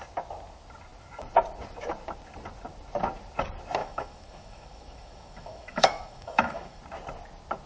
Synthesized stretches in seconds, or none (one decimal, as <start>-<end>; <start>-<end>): 3.8-6.8